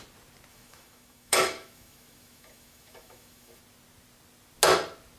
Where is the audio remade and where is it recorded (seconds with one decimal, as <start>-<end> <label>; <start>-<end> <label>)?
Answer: 0.0-0.5 recorded; 0.5-3.6 remade; 3.6-5.2 recorded